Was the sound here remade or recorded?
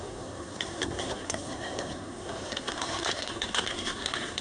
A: remade